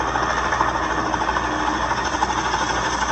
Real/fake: real